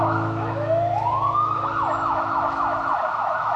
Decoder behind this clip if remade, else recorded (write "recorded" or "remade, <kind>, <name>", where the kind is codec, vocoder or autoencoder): remade, autoencoder, DAC-VAE